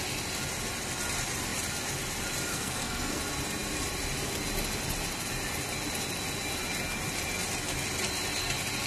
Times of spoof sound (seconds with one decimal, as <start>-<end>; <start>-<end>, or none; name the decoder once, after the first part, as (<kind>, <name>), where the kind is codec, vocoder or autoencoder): 2.5-3.2 (codec, SNAC)